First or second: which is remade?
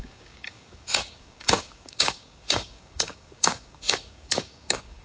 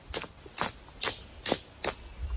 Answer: first